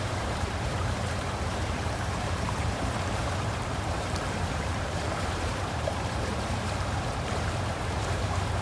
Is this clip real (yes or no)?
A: no